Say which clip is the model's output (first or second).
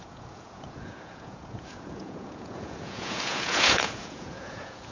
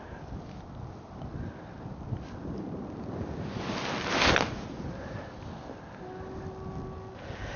first